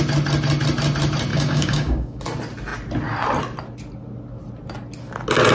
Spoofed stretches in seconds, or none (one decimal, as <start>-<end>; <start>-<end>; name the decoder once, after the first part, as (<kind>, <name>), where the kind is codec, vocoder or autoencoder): 1.3-2.2 (codec, DAC)